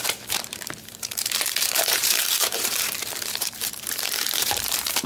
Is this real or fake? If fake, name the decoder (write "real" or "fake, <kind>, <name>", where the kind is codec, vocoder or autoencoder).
fake, vocoder, BigVGAN v2